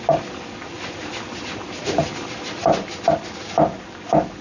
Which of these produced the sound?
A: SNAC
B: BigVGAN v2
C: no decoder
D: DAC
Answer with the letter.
C